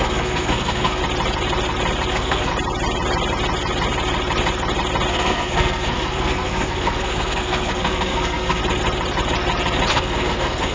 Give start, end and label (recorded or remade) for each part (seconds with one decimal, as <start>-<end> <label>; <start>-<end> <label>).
0.0-1.0 remade; 1.0-2.1 recorded; 2.1-2.5 remade; 2.5-5.1 recorded; 5.1-8.6 remade; 8.6-9.9 recorded; 9.9-10.7 remade

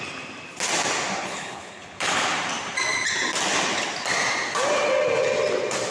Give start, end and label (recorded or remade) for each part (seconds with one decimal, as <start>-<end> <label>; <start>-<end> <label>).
0.0-1.2 recorded; 1.2-2.3 remade; 2.3-5.9 recorded

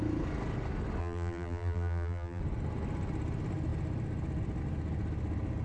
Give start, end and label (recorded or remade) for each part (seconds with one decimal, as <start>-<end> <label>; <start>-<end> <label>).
0.0-1.0 recorded; 1.0-2.4 remade; 2.4-5.6 recorded